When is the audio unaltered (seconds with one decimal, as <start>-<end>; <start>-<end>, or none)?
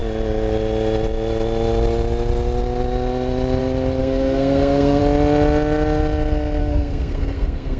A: 0.0-4.0; 5.0-6.6